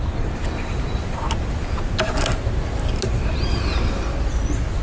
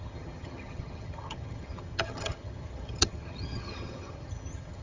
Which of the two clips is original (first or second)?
first